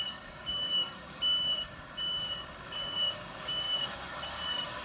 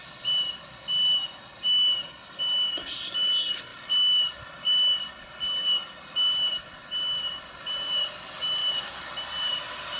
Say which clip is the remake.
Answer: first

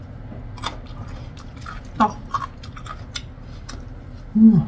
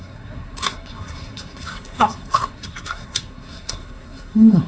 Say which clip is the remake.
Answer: second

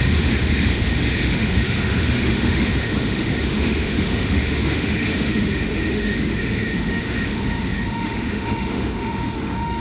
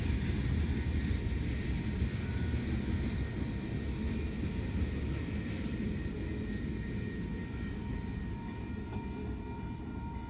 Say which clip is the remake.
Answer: first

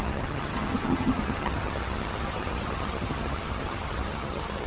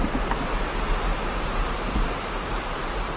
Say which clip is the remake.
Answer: first